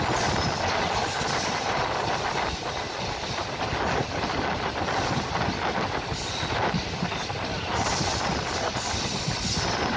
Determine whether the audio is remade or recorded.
recorded